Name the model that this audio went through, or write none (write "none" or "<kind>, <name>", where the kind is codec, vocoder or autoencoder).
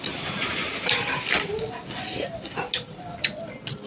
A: none